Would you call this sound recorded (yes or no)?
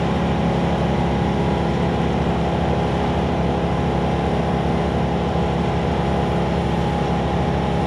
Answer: yes